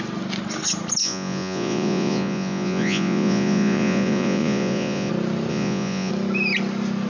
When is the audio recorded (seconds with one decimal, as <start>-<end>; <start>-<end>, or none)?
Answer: 0.0-1.0; 5.1-5.5; 6.1-7.1